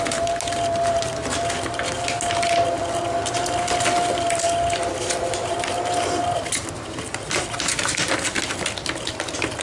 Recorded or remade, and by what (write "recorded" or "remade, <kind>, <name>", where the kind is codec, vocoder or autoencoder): recorded